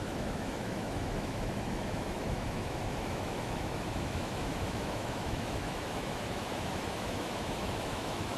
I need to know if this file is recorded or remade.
remade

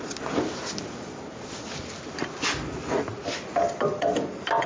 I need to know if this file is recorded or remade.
recorded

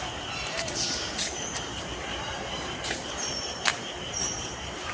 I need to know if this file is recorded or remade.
remade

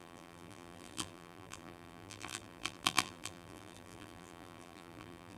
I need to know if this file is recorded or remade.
remade